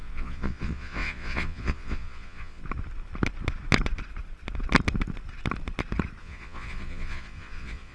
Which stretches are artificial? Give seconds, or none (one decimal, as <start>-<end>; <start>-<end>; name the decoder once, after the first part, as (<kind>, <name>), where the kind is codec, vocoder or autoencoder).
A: 0.0-2.6 (vocoder, Vocos); 6.2-7.9